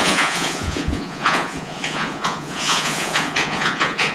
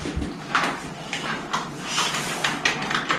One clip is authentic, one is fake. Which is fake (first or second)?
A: first